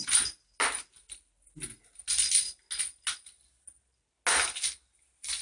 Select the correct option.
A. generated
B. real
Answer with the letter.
B